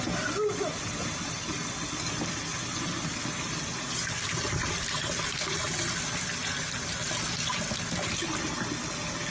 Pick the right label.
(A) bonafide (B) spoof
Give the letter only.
A